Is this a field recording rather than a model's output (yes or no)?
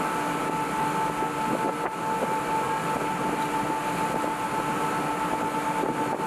yes